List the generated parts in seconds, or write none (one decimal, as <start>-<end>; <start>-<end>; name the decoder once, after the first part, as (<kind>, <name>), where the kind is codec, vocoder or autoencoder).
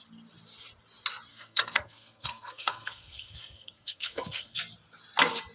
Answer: 1.3-4.6 (codec, SNAC)